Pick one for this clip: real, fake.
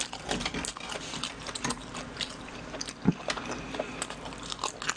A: real